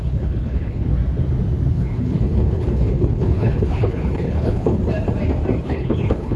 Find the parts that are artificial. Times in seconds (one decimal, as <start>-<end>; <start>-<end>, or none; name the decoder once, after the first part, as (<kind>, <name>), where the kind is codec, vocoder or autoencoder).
0.0-0.9 (codec, HILCodec); 1.7-4.8; 5.6-6.4